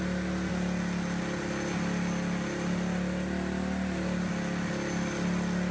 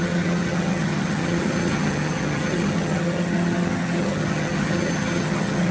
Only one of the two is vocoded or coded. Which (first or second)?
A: second